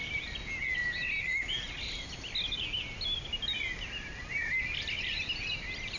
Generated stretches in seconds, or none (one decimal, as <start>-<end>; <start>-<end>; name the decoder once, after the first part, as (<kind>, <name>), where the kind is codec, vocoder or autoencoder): none